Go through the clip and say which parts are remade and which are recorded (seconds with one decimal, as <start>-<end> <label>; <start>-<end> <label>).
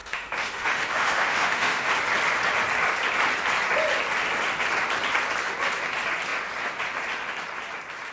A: 0.0-1.9 remade; 1.9-8.1 recorded